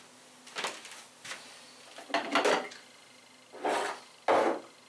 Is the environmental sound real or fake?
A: real